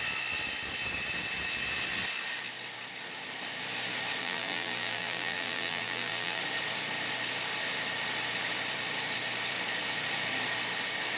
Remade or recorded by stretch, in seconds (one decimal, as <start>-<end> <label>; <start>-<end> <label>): 0.0-4.2 recorded; 4.2-6.4 remade; 6.4-11.2 recorded